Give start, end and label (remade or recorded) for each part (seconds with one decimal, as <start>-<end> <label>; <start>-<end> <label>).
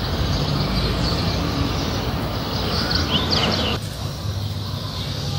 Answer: 0.0-5.4 recorded